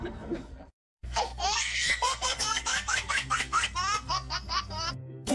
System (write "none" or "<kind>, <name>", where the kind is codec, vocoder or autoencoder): codec, SNAC